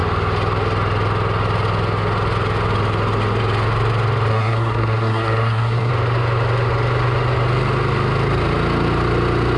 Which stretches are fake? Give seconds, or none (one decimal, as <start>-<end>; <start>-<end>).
4.3-5.9